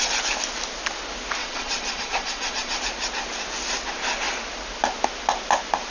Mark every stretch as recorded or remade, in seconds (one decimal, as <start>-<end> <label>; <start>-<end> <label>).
0.0-1.4 recorded; 1.4-2.8 remade; 2.8-5.9 recorded

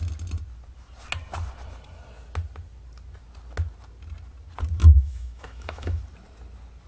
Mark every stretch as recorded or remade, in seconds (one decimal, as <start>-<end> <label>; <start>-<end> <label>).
0.0-4.8 recorded; 4.8-6.0 remade; 6.0-6.9 recorded